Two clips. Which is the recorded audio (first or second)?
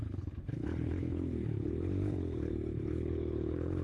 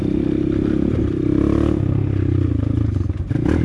second